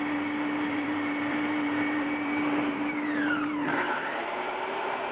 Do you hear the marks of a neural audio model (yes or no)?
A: yes